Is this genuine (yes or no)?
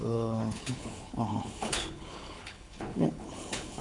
no